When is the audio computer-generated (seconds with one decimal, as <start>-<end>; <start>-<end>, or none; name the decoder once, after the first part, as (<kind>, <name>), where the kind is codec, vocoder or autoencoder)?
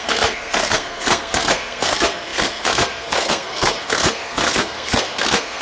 0.0-5.6 (codec, SNAC)